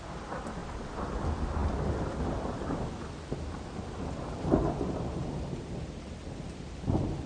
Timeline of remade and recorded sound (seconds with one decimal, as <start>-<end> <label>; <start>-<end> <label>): 0.0-7.3 recorded

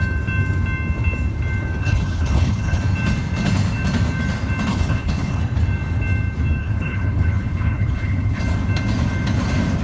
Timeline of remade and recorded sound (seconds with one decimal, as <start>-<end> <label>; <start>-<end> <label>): 0.0-1.8 recorded; 1.8-2.8 remade; 2.8-4.7 recorded; 4.7-5.4 remade; 5.4-6.6 recorded; 6.6-8.4 remade; 8.4-9.8 recorded